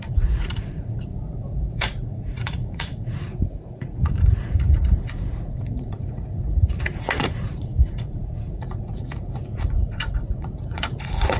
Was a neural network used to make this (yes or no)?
yes